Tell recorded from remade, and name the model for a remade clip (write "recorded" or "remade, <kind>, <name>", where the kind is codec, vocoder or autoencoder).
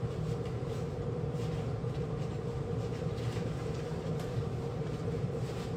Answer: remade, vocoder, BigVGAN v2